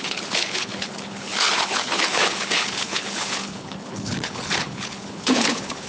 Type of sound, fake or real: fake